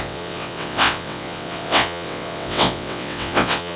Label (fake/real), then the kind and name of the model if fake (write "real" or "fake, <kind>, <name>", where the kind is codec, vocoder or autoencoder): fake, vocoder, WaveNeXt